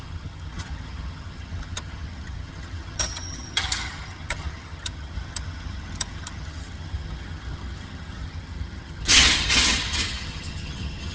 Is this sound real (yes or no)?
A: no